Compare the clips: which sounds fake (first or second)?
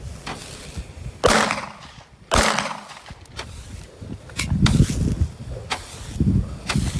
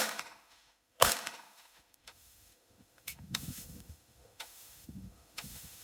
second